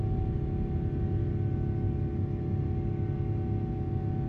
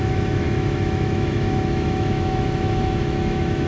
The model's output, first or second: second